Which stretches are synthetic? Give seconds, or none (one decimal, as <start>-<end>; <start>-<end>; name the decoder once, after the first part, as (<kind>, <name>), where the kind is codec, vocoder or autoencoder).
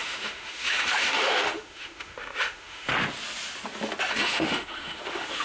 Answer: 0.0-2.9 (autoencoder, DAC-VAE); 4.1-5.4